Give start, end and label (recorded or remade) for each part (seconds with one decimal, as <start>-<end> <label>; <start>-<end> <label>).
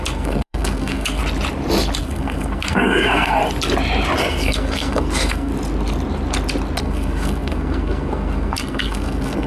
0.0-1.2 remade; 1.2-2.0 recorded; 2.0-3.4 remade; 3.4-4.2 recorded; 4.2-5.5 remade; 5.5-6.8 recorded; 6.8-9.5 remade